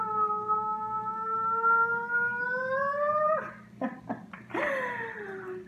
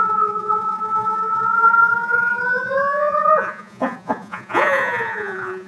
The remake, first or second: second